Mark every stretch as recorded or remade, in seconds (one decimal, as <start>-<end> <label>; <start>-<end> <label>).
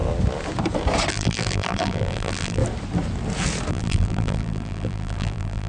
0.0-1.1 recorded; 1.1-2.6 remade; 2.6-3.7 recorded; 3.7-5.7 remade